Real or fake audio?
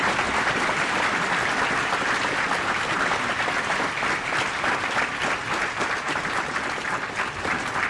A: fake